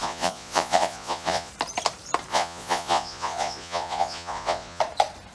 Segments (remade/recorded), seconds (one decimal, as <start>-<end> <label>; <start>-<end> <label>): 0.0-1.5 remade; 1.5-2.3 recorded; 2.3-4.8 remade; 4.8-5.3 recorded

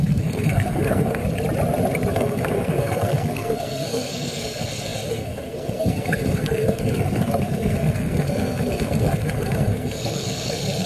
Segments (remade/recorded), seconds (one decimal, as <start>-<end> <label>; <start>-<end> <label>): 0.0-1.2 remade; 1.2-2.1 recorded; 2.1-10.9 remade

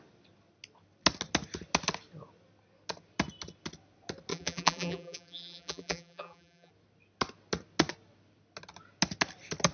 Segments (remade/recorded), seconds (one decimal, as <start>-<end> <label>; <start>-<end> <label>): 0.0-4.3 recorded; 4.3-6.7 remade; 6.7-9.7 recorded

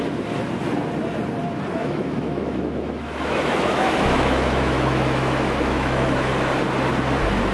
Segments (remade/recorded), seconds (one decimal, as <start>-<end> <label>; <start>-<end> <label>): 0.0-1.8 recorded; 1.8-6.3 remade; 6.3-7.5 recorded

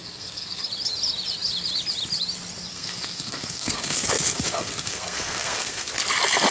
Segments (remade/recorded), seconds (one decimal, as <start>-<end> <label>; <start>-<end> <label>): 0.0-0.6 remade; 0.6-2.7 recorded; 2.7-5.9 remade; 5.9-6.5 recorded

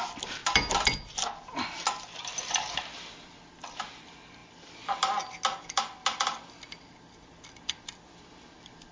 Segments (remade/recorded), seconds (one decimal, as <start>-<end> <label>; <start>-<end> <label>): 0.0-0.4 remade; 0.4-2.4 recorded; 2.4-4.4 remade; 4.4-7.5 recorded; 7.5-8.9 remade